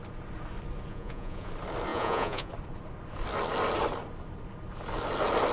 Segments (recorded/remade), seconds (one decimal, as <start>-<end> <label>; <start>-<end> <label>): 0.0-0.9 recorded; 0.9-1.5 remade; 1.5-1.9 recorded; 1.9-2.5 remade; 2.5-5.5 recorded